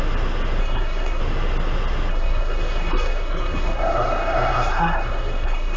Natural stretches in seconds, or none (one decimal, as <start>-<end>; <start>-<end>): 0.0-0.6; 1.2-2.1